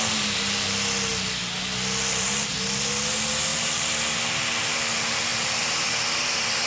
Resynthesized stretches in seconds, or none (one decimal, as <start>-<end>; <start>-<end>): none